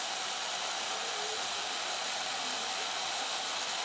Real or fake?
real